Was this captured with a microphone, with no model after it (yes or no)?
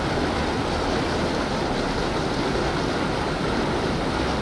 yes